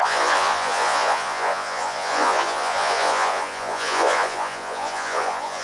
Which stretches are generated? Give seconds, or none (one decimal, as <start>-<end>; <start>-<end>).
0.0-5.6